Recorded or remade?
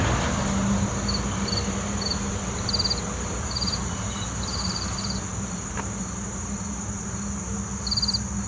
recorded